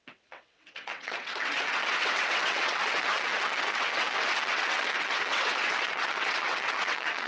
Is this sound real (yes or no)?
no